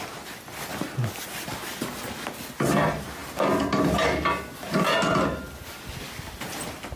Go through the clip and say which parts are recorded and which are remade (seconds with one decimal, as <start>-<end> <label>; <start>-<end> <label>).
0.0-7.0 recorded